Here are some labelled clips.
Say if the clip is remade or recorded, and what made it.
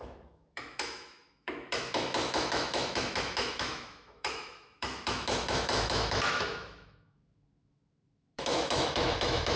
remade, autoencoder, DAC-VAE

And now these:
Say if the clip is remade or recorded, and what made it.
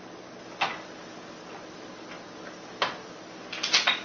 recorded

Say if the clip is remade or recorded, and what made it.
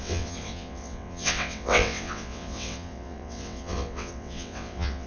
remade, vocoder, WaveNeXt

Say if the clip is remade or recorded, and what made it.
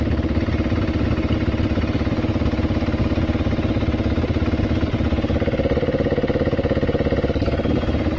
recorded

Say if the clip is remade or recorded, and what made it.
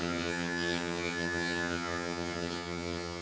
remade, vocoder, HiFi-GAN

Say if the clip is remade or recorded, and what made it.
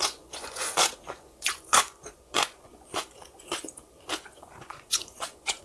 remade, vocoder, Vocos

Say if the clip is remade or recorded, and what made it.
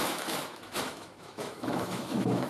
remade, autoencoder, DAC-VAE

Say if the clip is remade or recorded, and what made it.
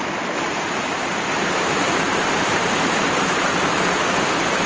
remade, vocoder, BigVGAN v2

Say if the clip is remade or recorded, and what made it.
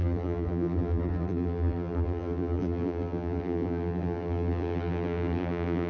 remade, vocoder, BigVGAN v2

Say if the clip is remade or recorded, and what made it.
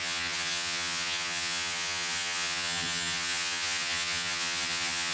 remade, vocoder, HiFi-GAN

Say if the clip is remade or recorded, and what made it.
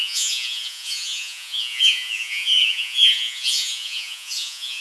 remade, vocoder, Vocos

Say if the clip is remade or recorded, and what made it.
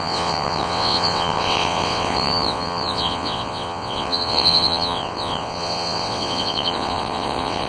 remade, vocoder, WaveNeXt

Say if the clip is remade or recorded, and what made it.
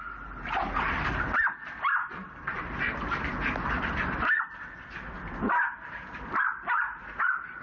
recorded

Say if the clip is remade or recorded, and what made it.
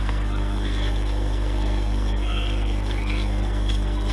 remade, codec, SNAC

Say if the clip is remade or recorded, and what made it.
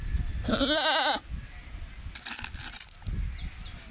recorded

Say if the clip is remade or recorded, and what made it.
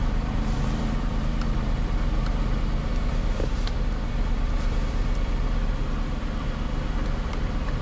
remade, vocoder, BigVGAN v2